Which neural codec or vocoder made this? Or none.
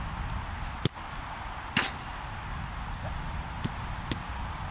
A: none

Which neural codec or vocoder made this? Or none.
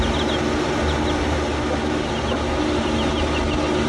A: none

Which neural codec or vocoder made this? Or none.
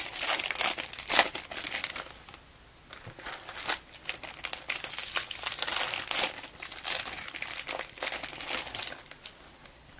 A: none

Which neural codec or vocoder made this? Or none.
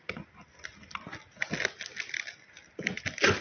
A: none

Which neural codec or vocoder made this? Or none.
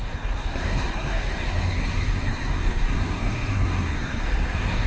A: codec, SNAC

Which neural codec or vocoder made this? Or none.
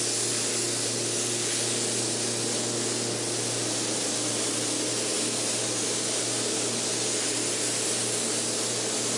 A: none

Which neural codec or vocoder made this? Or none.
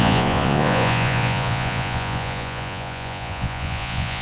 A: vocoder, Vocos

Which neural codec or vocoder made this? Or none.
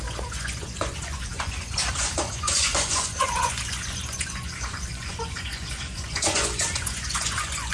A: vocoder, Vocos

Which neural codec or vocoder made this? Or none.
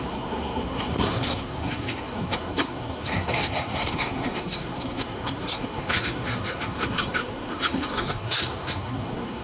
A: codec, SNAC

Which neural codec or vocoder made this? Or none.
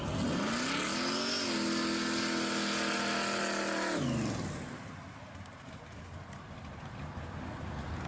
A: none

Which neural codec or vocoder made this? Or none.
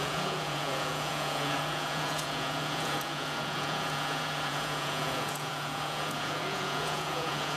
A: vocoder, Vocos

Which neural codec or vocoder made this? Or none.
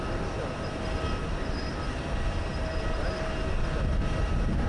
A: none